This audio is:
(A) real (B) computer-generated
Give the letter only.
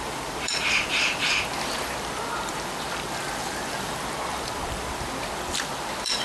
B